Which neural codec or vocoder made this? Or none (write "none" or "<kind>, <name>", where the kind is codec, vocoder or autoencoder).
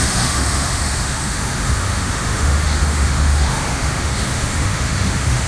autoencoder, DAC-VAE